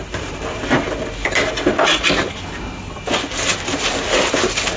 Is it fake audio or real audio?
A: real